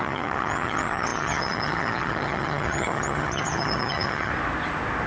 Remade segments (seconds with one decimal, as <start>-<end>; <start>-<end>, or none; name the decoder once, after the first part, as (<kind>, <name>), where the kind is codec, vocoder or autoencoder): 0.0-4.3 (vocoder, HiFi-GAN)